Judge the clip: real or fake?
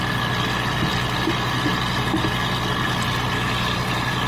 real